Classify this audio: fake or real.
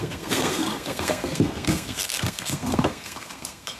fake